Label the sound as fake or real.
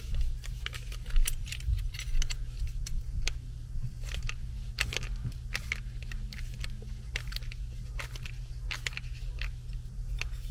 real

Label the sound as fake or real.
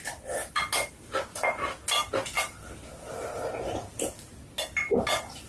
real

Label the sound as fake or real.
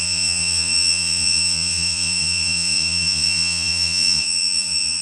fake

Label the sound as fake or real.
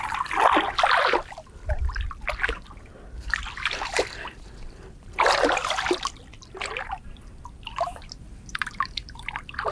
real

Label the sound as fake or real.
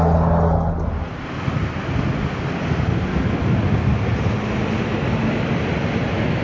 real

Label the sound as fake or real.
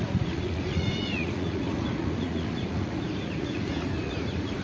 fake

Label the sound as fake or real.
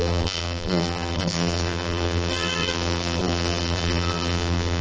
fake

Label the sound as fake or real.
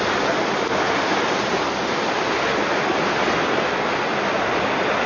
real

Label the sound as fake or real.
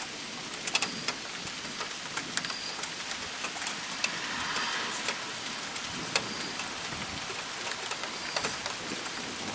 real